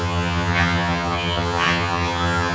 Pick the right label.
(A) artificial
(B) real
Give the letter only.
A